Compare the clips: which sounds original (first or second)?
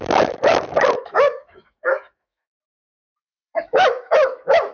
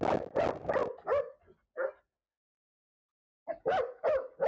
second